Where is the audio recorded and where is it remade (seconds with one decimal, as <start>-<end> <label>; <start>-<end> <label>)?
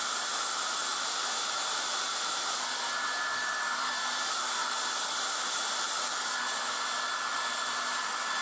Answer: 0.0-8.4 recorded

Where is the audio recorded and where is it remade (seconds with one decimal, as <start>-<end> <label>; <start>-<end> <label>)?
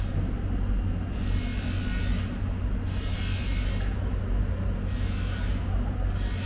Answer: 0.0-6.5 recorded